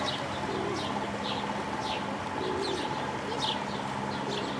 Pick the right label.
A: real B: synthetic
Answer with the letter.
A